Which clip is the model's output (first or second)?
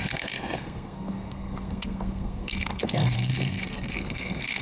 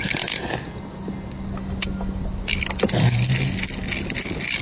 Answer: first